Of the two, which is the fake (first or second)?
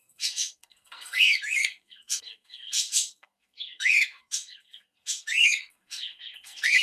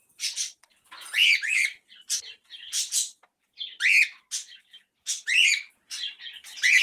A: first